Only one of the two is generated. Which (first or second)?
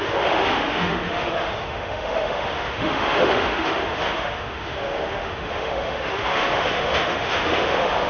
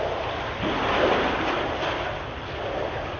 first